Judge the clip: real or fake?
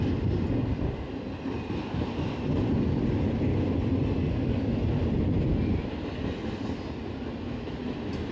real